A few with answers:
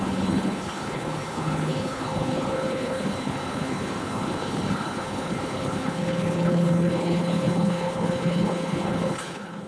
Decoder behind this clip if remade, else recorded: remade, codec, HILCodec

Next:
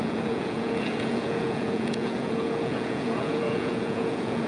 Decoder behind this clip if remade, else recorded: remade, vocoder, Vocos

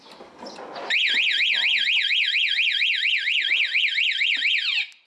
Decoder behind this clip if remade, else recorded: recorded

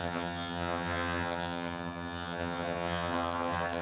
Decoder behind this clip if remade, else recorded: remade, vocoder, HiFi-GAN